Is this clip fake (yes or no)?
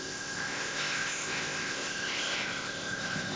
yes